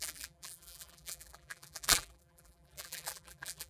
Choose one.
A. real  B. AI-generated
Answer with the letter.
B